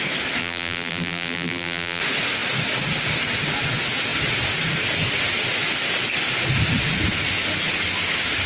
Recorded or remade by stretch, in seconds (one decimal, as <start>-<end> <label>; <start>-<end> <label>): 0.0-0.4 recorded; 0.4-2.0 remade; 2.0-8.5 recorded